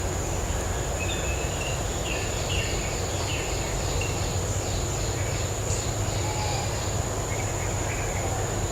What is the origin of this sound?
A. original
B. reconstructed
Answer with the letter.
A